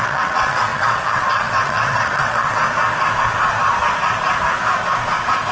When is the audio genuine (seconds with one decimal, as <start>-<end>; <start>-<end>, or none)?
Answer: 2.6-5.5